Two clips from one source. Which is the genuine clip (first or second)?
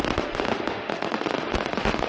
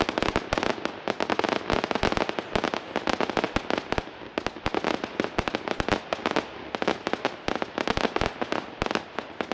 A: second